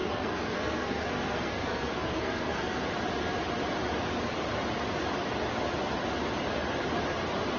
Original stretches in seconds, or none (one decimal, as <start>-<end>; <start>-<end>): 2.8-7.6